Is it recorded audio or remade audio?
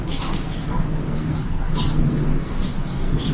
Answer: remade